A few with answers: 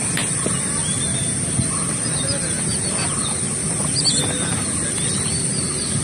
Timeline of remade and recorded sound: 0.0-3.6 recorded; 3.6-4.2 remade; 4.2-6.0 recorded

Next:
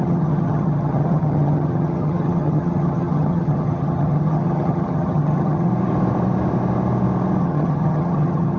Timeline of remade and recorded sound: 0.0-5.7 remade; 5.7-7.4 recorded; 7.4-8.6 remade